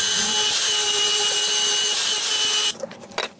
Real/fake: real